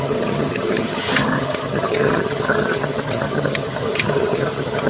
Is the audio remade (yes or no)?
yes